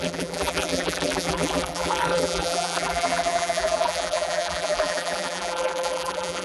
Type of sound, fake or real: fake